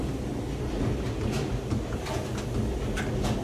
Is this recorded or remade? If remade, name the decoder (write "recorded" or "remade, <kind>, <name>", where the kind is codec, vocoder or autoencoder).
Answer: recorded